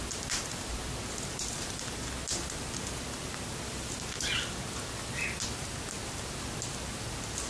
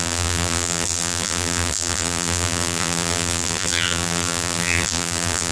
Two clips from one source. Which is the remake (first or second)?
second